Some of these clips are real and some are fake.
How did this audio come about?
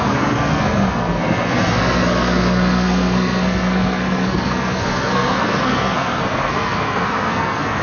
fake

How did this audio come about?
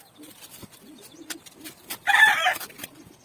real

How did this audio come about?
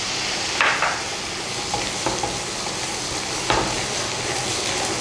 real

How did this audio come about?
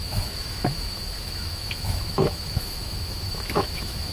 fake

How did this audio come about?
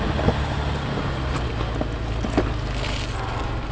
real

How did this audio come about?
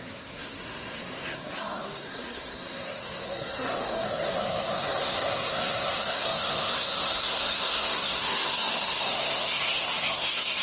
fake